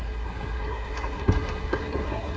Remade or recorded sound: remade